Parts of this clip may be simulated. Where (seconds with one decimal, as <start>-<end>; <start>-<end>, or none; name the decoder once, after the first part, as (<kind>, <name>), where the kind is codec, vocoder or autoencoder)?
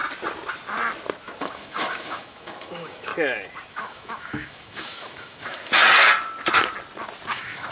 1.4-3.1 (autoencoder, DAC-VAE); 3.7-5.8; 7.3-7.7